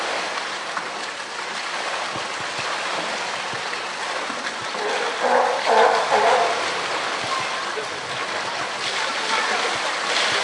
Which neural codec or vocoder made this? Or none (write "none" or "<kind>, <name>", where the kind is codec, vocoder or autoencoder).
none